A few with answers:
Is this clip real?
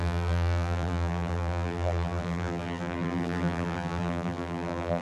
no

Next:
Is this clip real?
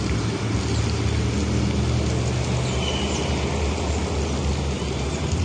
yes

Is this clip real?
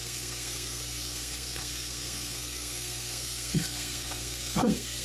no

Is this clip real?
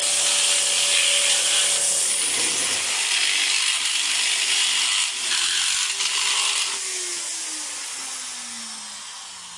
yes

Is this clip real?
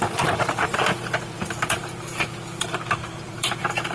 no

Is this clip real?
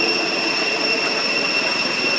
yes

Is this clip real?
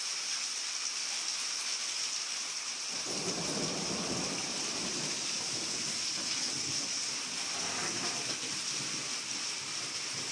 yes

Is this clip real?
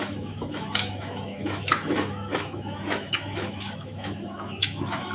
no